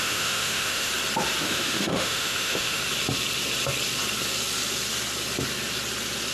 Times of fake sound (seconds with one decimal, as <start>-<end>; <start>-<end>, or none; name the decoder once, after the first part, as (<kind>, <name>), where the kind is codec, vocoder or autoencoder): 0.0-0.9 (autoencoder, DAC-VAE); 1.4-2.8